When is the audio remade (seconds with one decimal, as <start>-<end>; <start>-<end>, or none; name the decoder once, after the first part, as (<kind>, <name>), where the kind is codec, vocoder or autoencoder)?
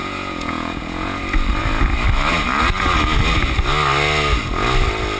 0.0-1.2 (vocoder, Vocos)